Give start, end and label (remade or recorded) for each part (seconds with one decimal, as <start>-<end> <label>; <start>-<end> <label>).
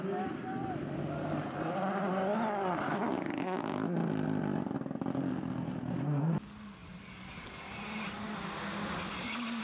0.0-9.6 recorded